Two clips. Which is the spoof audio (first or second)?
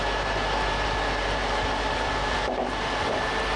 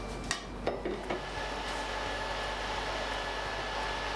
first